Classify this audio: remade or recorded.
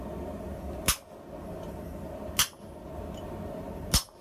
recorded